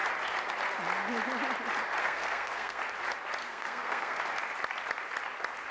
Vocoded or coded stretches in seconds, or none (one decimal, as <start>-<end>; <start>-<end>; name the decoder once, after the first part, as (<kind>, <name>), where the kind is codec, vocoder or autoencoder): 2.0-2.8 (codec, SNAC); 3.4-4.2

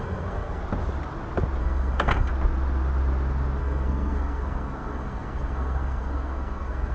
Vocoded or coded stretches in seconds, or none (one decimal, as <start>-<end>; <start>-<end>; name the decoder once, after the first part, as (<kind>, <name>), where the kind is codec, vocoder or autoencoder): 0.0-0.6 (codec, SNAC); 1.6-2.3; 3.6-6.9

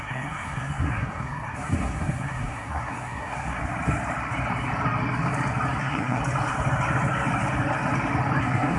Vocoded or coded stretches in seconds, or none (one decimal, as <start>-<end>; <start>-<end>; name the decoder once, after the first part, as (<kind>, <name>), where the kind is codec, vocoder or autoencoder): 0.0-3.6 (codec, SNAC); 5.8-6.2; 8.4-8.8

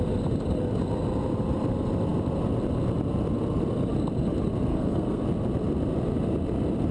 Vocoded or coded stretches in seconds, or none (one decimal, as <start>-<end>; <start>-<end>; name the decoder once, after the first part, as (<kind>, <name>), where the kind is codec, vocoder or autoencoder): 4.7-5.2 (codec, SNAC)

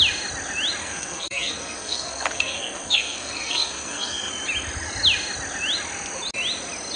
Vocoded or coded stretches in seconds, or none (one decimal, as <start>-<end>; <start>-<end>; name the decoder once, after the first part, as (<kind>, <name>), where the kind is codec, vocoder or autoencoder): 0.8-4.3 (codec, SNAC)

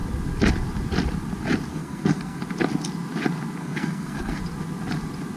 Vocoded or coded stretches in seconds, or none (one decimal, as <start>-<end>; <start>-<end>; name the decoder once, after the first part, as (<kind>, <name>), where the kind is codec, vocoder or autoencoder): 1.7-2.4 (codec, SNAC); 3.6-4.4

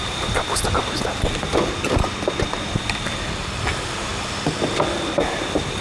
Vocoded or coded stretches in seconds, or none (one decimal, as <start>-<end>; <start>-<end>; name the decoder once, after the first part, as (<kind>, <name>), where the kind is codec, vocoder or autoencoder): none

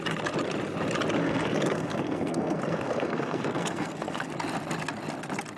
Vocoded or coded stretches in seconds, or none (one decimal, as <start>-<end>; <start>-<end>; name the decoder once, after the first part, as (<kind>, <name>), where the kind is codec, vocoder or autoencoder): 1.2-4.3 (codec, SNAC)